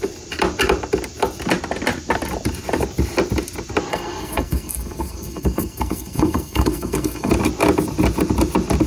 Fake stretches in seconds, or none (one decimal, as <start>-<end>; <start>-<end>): 3.9-7.3